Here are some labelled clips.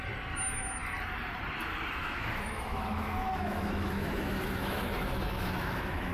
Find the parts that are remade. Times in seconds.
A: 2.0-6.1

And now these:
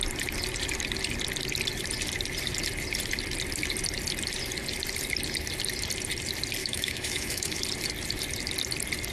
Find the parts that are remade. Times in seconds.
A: 6.6-7.6

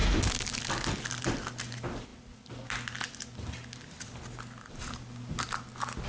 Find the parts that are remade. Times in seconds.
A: none

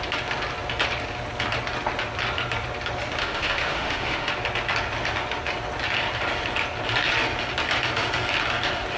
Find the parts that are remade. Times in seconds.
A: 3.2-4.3

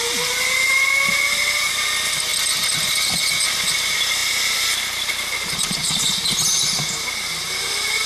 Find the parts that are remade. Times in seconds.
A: none

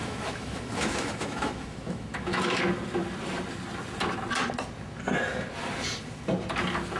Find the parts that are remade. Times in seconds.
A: 0.0-2.6

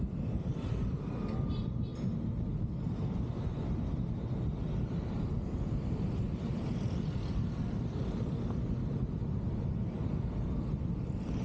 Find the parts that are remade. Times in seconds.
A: none